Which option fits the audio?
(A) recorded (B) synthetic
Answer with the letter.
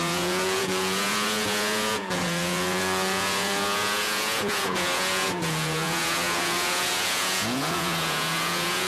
B